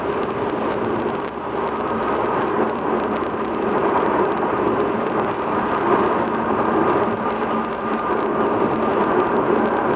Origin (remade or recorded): remade